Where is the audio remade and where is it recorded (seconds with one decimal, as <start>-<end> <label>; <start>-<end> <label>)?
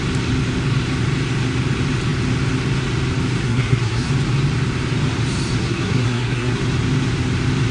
0.0-3.4 recorded; 3.4-4.1 remade; 4.1-5.6 recorded; 5.6-6.6 remade; 6.6-7.7 recorded